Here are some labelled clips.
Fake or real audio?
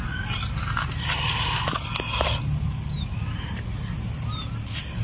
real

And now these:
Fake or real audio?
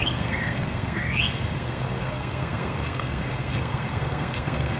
fake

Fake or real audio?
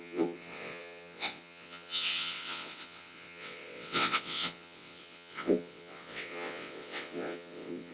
fake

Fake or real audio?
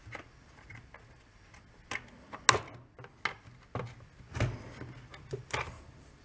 real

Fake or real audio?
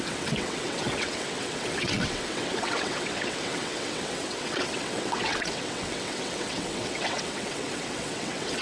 fake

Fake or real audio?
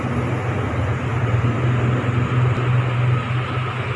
real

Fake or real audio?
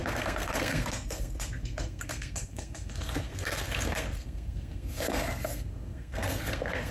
fake